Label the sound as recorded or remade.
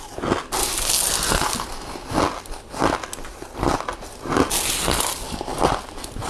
recorded